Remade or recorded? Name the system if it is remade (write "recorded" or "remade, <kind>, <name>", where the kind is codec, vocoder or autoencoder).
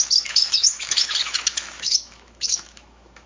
remade, autoencoder, DAC-VAE